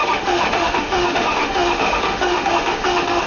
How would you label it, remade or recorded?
remade